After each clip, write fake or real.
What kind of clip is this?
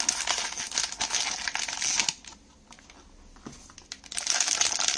real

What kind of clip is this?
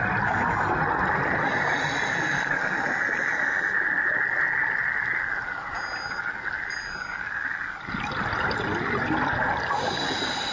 real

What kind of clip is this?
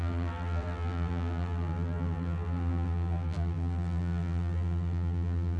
fake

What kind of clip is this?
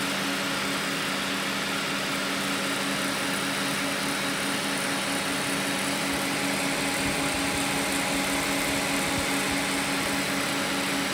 real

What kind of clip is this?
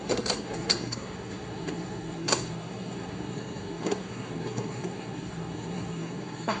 fake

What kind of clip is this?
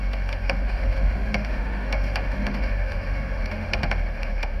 fake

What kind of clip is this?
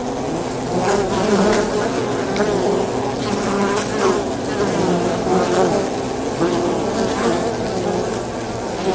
real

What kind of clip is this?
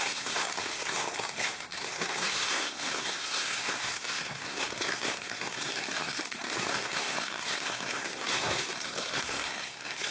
fake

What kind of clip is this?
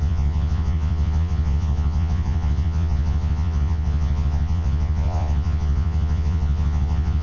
fake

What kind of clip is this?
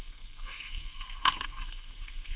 fake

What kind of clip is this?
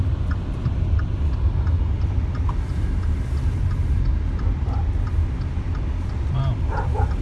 real